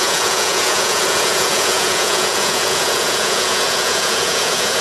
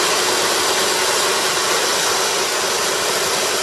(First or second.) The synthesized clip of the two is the first